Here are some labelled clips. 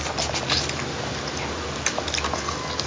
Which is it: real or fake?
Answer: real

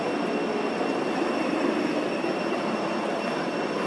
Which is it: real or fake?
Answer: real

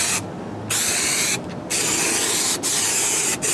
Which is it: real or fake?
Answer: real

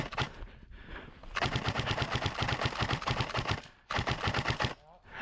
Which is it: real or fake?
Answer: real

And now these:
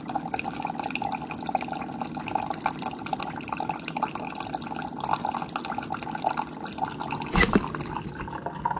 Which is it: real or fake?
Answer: real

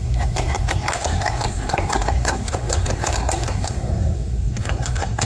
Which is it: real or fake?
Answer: fake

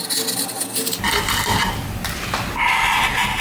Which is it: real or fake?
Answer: real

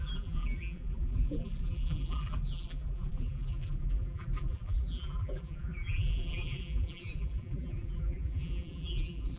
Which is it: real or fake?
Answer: fake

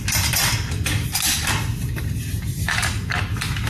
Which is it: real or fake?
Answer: real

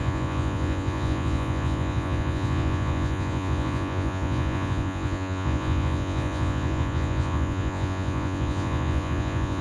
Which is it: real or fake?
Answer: fake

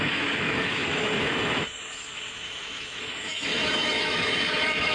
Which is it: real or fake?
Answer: fake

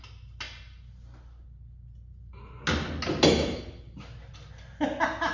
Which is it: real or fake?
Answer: real